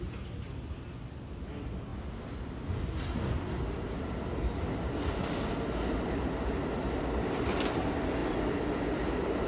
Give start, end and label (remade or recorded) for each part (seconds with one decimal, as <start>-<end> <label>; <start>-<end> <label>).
0.0-9.5 recorded